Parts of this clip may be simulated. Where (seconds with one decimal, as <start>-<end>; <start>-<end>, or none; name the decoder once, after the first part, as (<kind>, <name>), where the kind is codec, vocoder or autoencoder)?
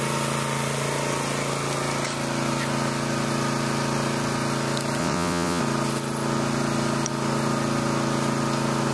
5.0-5.6 (vocoder, WaveNeXt)